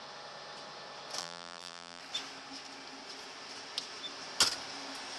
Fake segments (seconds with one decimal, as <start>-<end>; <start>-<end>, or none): 1.2-2.0